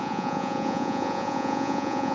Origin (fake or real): fake